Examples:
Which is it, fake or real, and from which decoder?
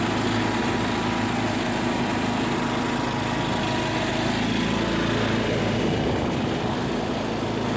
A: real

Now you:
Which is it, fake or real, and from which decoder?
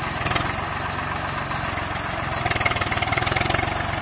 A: real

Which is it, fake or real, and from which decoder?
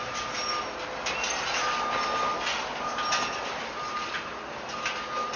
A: real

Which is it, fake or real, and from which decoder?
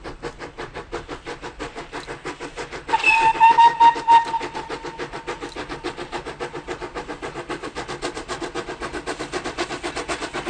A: real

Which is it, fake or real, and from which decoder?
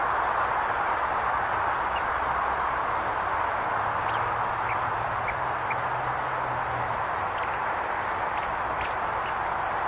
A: real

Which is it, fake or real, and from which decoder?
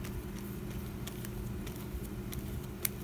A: real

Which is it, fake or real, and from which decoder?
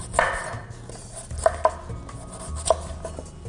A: real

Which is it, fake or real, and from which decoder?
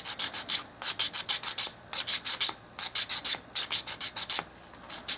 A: real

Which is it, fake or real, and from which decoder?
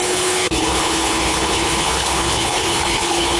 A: fake, codec, HILCodec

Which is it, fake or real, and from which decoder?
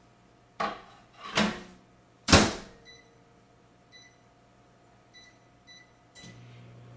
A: fake, vocoder, BigVGAN v2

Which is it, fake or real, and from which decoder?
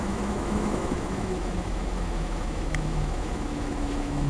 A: fake, autoencoder, DAC-VAE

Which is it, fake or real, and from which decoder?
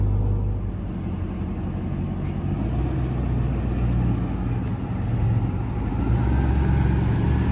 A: real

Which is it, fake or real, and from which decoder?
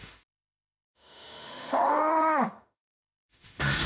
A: fake, autoencoder, DAC-VAE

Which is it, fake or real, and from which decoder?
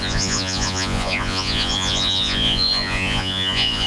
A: fake, vocoder, Vocos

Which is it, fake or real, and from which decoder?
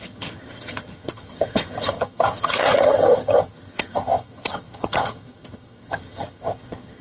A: fake, vocoder, HiFi-GAN